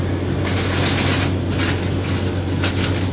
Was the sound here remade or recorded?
recorded